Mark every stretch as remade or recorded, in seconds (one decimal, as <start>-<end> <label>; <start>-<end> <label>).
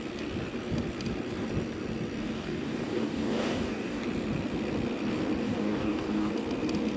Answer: 0.0-2.2 recorded; 2.2-4.0 remade; 4.0-5.4 recorded; 5.4-6.3 remade; 6.3-7.0 recorded